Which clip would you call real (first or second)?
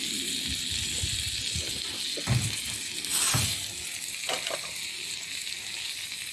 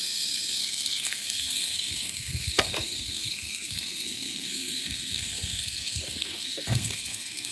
first